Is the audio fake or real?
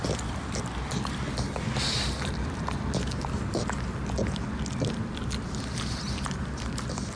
real